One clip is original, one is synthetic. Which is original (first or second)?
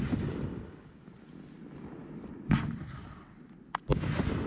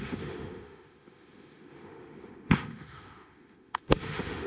first